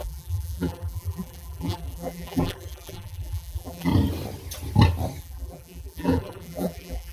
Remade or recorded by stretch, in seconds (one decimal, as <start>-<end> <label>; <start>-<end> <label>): 0.0-3.9 remade; 3.9-5.2 recorded; 5.2-7.1 remade